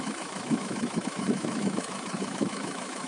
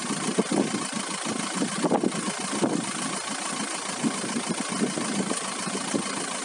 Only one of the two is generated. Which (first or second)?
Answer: first